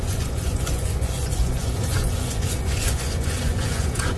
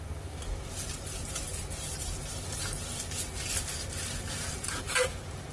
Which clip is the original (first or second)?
second